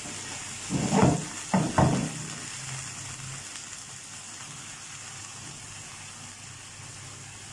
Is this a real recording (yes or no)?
yes